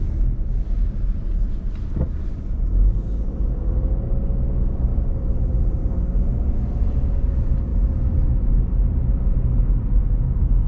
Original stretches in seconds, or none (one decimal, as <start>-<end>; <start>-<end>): 0.0-10.7